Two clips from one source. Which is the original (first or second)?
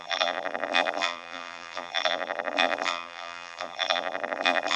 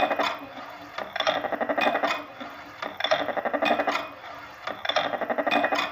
second